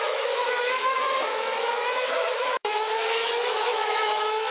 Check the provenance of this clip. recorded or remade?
remade